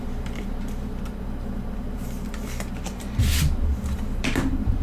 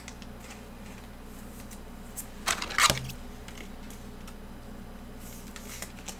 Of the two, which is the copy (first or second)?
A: first